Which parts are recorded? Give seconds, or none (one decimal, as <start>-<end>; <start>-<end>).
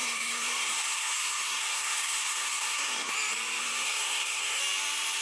3.1-3.6; 4.6-5.2